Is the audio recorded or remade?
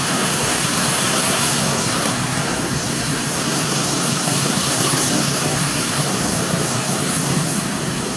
remade